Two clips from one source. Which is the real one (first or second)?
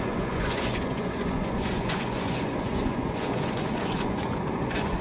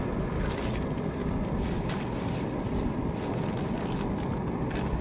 second